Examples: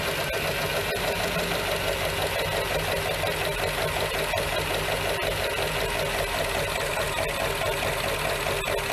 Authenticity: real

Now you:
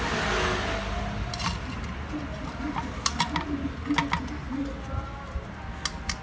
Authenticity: real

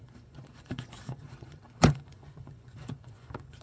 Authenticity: fake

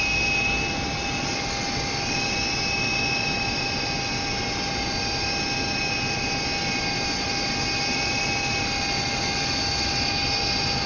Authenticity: real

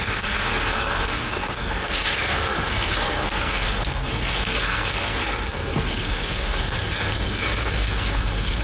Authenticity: fake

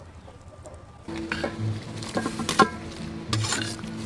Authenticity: real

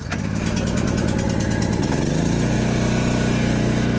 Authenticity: real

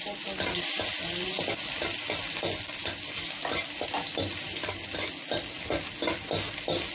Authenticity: real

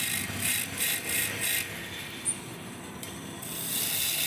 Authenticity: real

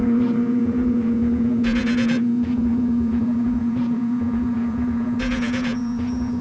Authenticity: fake